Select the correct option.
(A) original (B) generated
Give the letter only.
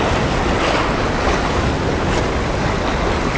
A